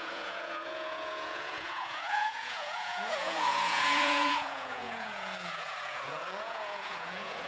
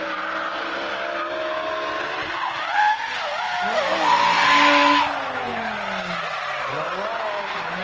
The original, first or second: second